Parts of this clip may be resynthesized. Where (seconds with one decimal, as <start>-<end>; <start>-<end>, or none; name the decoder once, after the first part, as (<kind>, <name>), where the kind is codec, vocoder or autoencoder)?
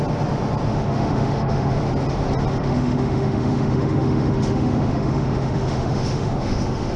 0.7-1.8 (autoencoder, DAC-VAE); 2.6-7.0